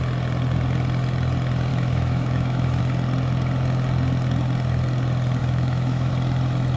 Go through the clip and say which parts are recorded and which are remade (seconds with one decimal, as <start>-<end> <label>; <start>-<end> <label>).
0.0-1.7 recorded; 1.7-2.8 remade; 2.8-5.4 recorded; 5.4-6.1 remade; 6.1-6.8 recorded